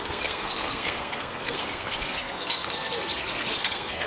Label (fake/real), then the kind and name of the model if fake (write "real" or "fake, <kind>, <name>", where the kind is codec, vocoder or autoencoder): fake, codec, SNAC